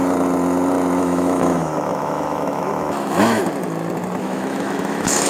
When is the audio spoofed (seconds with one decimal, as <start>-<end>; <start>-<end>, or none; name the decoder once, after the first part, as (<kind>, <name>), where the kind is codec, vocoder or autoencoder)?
1.0-3.4 (autoencoder, DAC-VAE); 4.2-5.3